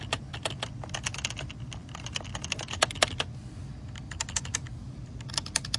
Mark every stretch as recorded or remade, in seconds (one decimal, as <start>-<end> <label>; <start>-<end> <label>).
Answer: 0.0-5.8 recorded